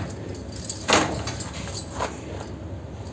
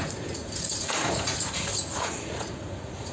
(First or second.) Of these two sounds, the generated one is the second